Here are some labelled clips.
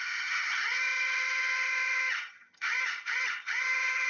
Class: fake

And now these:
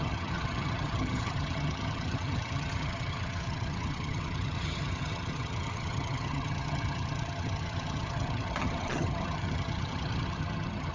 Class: fake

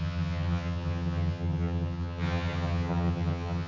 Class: fake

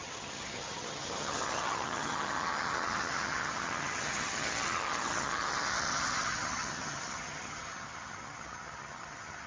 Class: fake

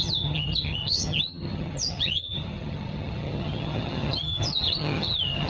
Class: fake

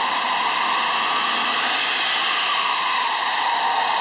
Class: real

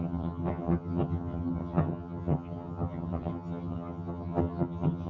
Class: fake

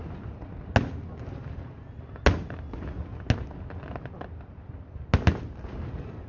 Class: real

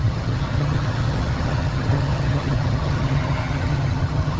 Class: fake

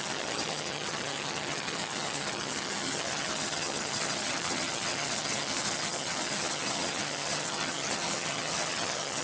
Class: fake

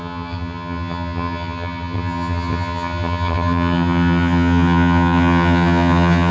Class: fake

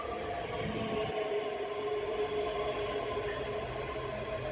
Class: real